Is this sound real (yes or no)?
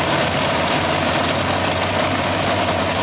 yes